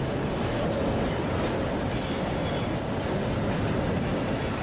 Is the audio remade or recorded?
recorded